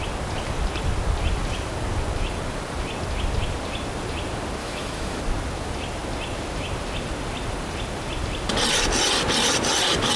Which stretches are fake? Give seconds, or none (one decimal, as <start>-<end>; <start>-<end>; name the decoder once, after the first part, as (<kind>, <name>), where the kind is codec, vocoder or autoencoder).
4.6-5.2 (autoencoder, DAC-VAE)